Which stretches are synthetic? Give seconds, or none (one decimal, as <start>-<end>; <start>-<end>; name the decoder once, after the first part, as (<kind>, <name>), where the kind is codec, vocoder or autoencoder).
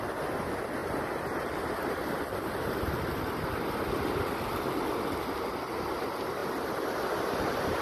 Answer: 0.8-3.0 (vocoder, BigVGAN v2)